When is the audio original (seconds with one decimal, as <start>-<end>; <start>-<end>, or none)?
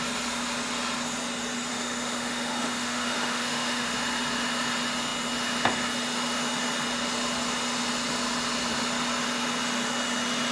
0.0-1.7; 3.9-10.5